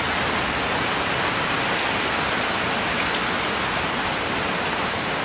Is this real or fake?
real